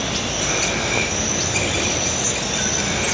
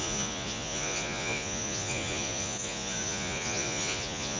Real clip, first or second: first